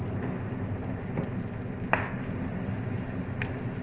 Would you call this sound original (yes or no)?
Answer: yes